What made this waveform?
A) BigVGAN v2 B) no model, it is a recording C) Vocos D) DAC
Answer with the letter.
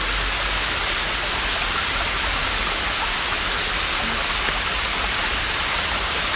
B